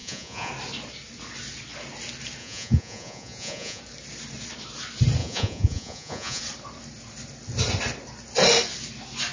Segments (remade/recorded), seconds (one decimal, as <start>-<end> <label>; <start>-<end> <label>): 0.0-0.5 remade; 0.5-2.4 recorded; 2.4-3.8 remade; 3.8-5.2 recorded; 5.2-6.4 remade; 6.4-9.3 recorded